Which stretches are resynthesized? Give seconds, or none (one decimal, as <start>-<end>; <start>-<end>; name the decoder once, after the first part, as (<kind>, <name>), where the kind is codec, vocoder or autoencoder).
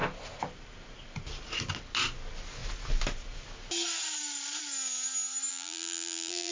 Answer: 5.5-6.5 (vocoder, BigVGAN v2)